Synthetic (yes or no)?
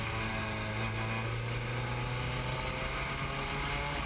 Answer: no